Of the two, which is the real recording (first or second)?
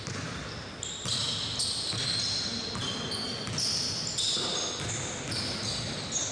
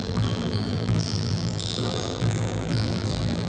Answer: first